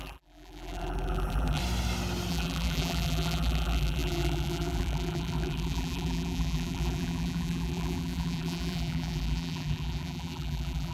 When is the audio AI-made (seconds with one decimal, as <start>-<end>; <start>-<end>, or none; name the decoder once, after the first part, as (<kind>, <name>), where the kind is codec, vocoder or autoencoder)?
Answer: 0.0-1.6 (vocoder, BigVGAN v2); 2.3-10.9